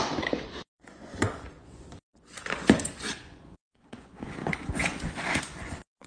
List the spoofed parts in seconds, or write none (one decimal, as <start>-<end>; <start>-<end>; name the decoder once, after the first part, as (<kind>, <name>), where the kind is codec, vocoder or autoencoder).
0.0-6.1 (vocoder, Vocos)